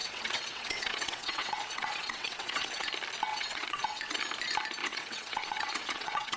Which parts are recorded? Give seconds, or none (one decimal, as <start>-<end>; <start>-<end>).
2.9-3.3; 4.2-4.8